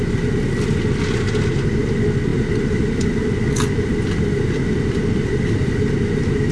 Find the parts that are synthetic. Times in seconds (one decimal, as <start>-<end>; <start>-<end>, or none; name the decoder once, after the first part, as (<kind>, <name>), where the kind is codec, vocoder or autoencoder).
2.3-5.9 (vocoder, BigVGAN v2)